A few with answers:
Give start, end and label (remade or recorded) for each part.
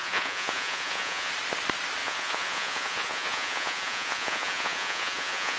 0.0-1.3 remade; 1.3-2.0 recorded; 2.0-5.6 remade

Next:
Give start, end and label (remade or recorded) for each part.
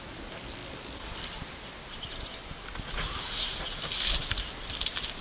0.0-5.2 recorded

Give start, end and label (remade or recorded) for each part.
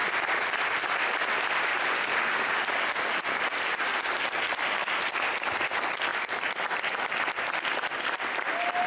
0.0-8.9 recorded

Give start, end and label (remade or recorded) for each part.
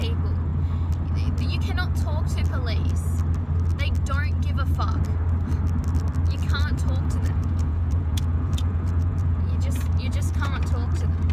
0.0-6.7 recorded; 6.7-10.6 remade; 10.6-11.3 recorded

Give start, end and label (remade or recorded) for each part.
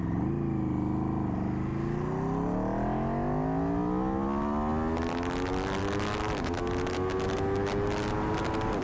0.0-8.8 recorded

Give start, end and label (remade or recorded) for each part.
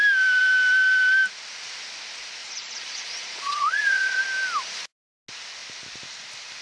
0.0-2.4 recorded; 2.4-4.2 remade; 4.2-6.6 recorded